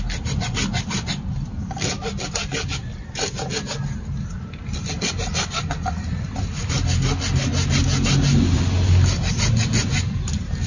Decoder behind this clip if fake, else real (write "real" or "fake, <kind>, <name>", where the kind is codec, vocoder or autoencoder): real